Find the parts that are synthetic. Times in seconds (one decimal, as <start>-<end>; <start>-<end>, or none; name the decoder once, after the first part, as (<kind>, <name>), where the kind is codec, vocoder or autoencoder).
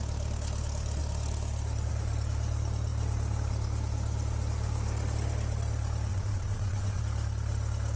6.1-7.0 (vocoder, WaveNeXt)